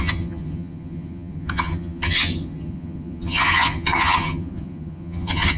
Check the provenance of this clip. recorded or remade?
remade